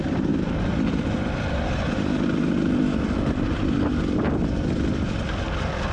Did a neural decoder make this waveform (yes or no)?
no